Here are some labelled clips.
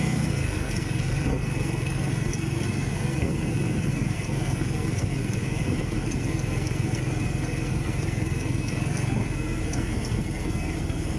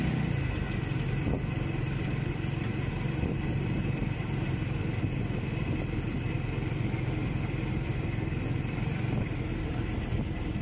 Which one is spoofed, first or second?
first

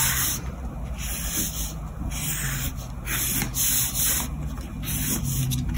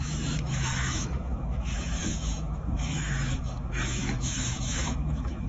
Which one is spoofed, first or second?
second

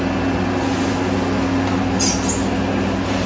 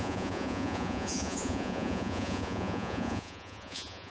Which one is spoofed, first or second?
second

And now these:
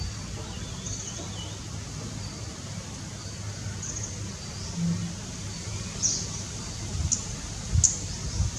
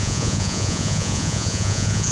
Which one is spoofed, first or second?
second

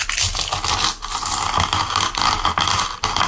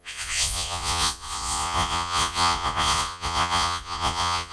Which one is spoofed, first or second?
second